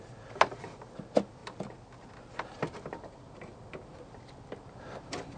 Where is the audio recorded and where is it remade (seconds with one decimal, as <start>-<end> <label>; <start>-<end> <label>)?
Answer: 0.0-5.4 recorded